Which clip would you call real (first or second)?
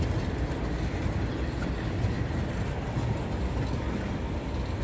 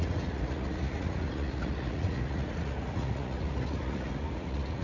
first